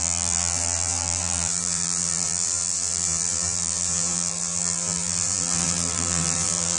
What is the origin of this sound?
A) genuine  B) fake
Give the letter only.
B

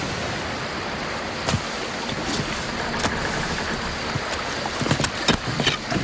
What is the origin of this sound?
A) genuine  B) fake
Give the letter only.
A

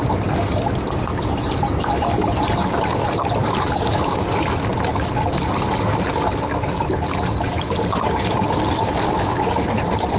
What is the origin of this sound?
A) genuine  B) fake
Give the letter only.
A